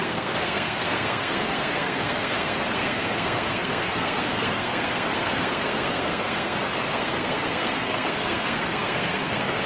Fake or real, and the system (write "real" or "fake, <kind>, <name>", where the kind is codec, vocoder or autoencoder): fake, codec, SNAC